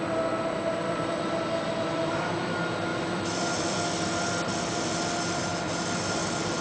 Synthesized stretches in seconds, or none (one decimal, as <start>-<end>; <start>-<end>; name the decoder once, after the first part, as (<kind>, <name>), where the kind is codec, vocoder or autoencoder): 0.8-1.4 (vocoder, BigVGAN v2); 2.9-4.3; 5.5-6.6